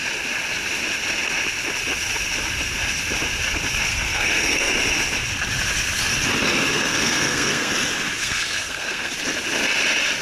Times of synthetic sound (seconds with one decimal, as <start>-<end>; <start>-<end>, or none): 3.9-4.7; 6.7-7.7; 8.2-9.1